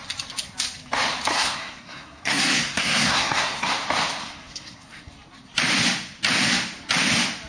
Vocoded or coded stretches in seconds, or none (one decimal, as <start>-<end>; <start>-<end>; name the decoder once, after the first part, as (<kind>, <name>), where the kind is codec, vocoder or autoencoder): 1.3-3.7 (codec, SNAC); 4.2-5.1